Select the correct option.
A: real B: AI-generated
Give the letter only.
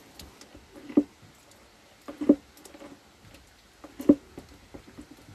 A